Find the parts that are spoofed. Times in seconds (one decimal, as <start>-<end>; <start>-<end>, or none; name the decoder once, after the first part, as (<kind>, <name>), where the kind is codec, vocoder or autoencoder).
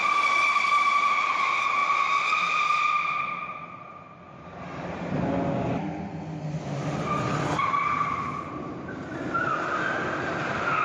none